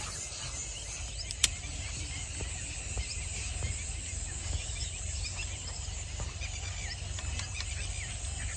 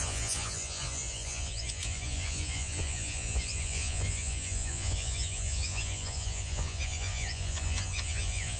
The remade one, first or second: second